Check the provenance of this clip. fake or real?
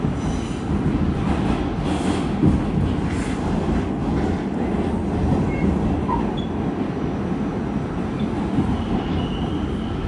real